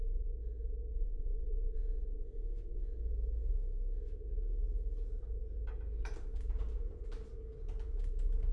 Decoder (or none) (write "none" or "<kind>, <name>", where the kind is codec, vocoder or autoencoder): none